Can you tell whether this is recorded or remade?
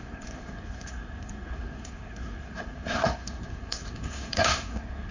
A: remade